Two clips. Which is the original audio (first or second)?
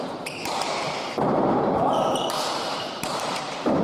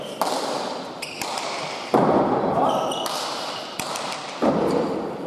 second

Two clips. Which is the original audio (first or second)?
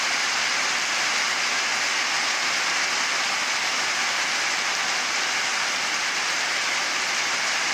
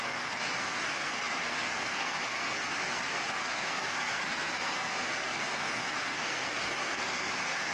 first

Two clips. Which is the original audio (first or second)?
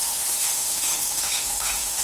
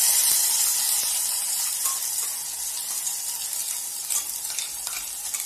second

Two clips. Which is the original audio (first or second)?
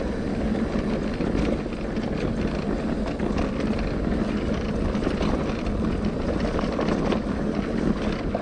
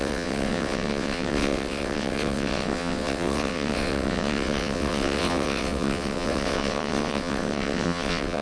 first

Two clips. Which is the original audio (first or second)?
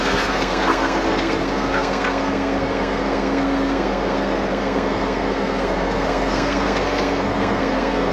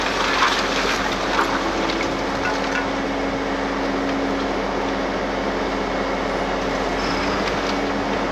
second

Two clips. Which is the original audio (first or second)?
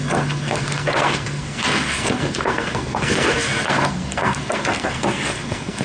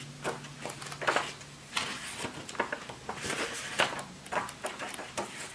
second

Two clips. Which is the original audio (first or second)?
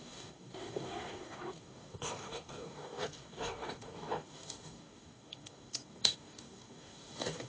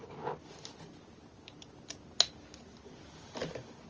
second